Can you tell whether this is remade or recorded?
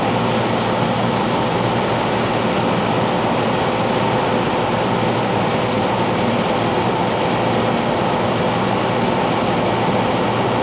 recorded